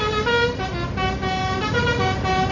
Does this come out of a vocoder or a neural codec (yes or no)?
no